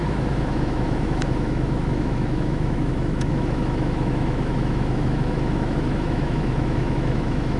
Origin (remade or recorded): remade